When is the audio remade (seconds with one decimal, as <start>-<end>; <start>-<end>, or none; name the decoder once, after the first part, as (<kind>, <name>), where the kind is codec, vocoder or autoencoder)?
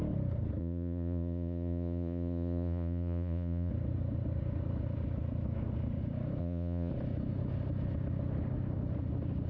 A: 0.6-3.7 (vocoder, Vocos); 6.4-6.9